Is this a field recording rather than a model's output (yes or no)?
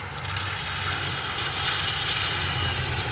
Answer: yes